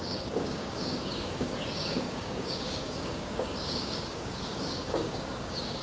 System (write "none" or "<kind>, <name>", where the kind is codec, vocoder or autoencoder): codec, DAC